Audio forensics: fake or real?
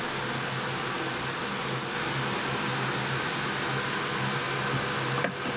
real